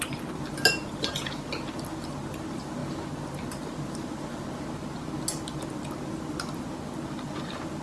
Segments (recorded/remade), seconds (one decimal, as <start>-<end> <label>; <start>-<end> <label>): 0.0-7.8 recorded